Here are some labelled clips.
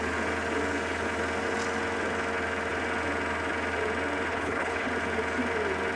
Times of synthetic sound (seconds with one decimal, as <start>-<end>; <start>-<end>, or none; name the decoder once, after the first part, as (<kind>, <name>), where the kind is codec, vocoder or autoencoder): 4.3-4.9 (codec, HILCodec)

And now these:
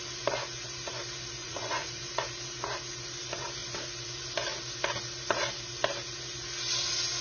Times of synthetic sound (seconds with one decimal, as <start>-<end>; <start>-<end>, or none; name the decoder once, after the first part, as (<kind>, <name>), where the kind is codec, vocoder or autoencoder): 1.4-1.9 (vocoder, Vocos)

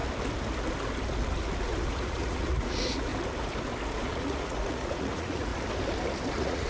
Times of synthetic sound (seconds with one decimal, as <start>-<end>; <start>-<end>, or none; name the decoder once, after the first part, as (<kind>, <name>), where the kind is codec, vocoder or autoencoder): 1.9-3.1 (vocoder, Vocos); 4.1-5.5; 6.3-6.7

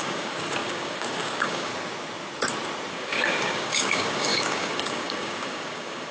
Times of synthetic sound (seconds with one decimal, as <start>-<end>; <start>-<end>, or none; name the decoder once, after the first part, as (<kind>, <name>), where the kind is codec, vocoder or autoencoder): 0.0-1.7 (codec, DAC); 2.9-6.1